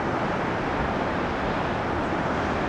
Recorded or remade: recorded